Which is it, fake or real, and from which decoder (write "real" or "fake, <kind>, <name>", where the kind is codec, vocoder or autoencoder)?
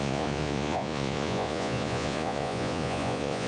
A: fake, vocoder, Vocos